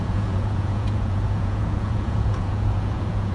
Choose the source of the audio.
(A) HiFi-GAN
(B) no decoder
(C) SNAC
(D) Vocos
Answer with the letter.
D